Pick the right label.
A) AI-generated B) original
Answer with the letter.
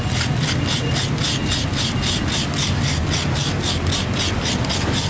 B